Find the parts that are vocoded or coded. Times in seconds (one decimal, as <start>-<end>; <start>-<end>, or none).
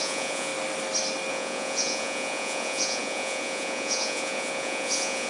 0.0-0.5; 1.3-5.3